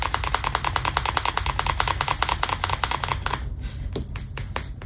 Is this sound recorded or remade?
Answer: recorded